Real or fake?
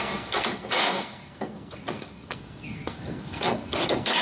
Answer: fake